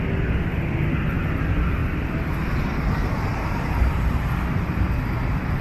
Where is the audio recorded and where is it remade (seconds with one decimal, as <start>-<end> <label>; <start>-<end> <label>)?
0.0-1.8 recorded; 1.8-2.5 remade; 2.5-3.3 recorded; 3.3-5.0 remade; 5.0-5.6 recorded